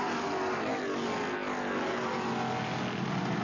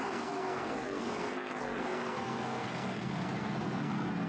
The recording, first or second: first